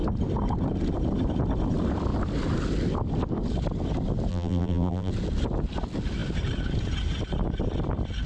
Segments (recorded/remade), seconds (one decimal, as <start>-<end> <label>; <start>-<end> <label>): 0.0-4.3 recorded; 4.3-5.1 remade; 5.1-8.3 recorded